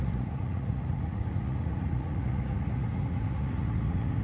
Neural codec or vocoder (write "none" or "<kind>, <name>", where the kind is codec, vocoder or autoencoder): vocoder, Vocos